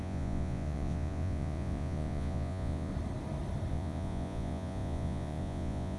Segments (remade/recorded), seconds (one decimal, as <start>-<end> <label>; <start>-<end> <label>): 0.0-2.9 remade; 2.9-3.7 recorded; 3.7-6.0 remade